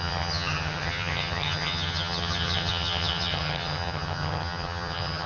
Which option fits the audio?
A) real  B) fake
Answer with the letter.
B